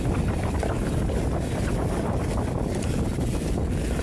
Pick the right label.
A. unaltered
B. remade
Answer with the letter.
A